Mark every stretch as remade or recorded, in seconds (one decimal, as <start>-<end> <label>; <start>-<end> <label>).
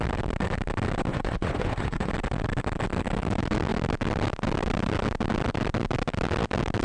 0.0-1.1 recorded; 1.1-2.1 remade; 2.1-6.8 recorded